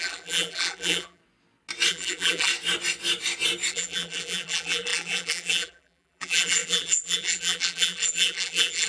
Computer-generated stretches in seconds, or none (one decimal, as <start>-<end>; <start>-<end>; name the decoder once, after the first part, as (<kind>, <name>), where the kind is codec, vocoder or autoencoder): 0.0-1.2 (vocoder, BigVGAN v2); 1.9-2.5; 3.7-8.9